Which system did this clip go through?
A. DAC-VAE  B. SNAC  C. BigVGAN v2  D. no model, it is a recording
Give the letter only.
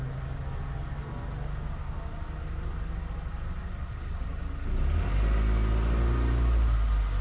D